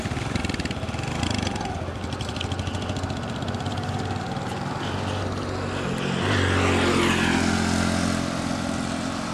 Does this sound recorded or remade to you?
recorded